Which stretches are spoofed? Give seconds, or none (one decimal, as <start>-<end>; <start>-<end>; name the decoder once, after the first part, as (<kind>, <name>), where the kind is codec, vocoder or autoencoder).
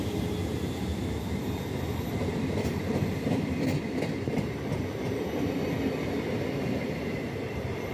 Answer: 0.0-7.9 (vocoder, BigVGAN v2)